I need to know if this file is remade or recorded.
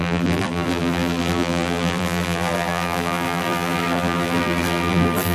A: remade